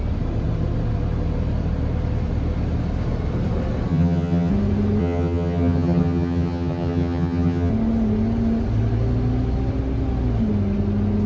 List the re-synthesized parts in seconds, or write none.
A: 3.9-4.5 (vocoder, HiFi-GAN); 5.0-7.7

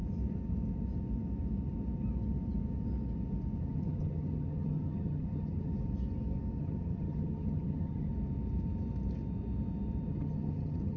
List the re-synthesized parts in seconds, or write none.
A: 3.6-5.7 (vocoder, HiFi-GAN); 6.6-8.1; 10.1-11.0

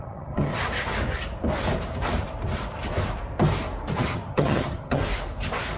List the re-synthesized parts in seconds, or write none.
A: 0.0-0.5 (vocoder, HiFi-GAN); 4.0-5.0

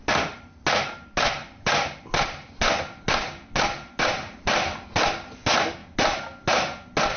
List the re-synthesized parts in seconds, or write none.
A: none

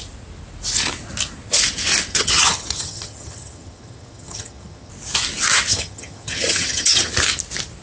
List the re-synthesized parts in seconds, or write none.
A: 2.1-4.9 (vocoder, HiFi-GAN); 5.7-7.1

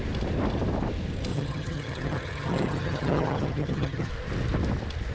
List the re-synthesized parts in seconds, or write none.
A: 1.3-4.1 (vocoder, HiFi-GAN)

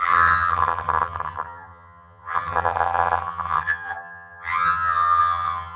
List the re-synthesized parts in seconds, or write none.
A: 0.0-5.8 (vocoder, HiFi-GAN)

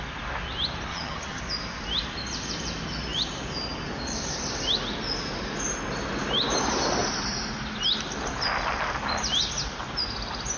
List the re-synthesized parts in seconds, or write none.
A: 0.9-1.4 (vocoder, HiFi-GAN)